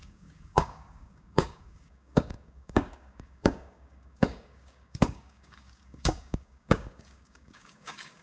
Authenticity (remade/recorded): remade